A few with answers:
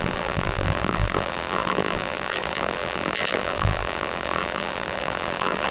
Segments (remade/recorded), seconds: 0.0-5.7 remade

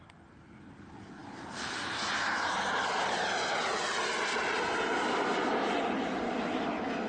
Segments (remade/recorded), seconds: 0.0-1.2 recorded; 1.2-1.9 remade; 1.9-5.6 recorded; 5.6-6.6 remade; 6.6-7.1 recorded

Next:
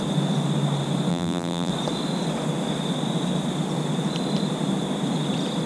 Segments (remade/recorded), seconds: 0.0-1.1 recorded; 1.1-1.7 remade; 1.7-5.7 recorded

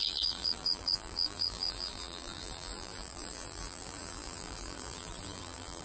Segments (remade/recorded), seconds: 0.0-5.8 remade